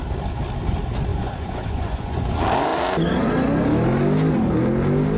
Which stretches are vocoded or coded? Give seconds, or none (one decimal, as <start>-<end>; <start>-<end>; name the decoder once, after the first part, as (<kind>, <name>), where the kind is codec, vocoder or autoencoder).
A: 1.1-2.3 (vocoder, Vocos)

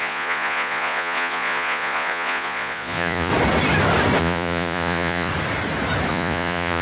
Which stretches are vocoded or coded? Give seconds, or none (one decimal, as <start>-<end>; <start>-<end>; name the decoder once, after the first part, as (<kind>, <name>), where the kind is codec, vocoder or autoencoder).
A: 0.0-3.3 (vocoder, Vocos); 4.2-5.3; 6.1-6.8

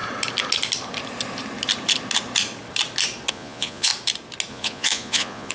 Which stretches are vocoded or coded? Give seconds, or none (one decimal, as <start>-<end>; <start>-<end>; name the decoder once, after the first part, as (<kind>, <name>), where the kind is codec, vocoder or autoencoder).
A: 3.3-3.9 (vocoder, Vocos); 4.5-5.5